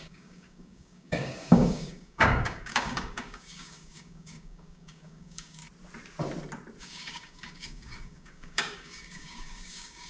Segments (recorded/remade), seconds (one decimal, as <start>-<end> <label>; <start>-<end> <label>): 0.0-5.6 remade; 5.6-6.8 recorded; 6.8-10.1 remade